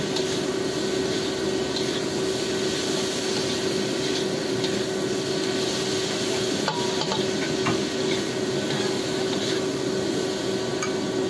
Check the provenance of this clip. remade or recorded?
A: recorded